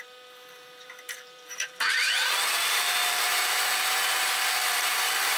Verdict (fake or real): fake